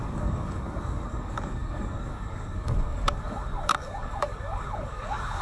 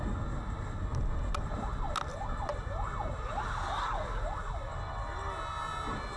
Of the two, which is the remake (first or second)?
first